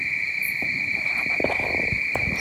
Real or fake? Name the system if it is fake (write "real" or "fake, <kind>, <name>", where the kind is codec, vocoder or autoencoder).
real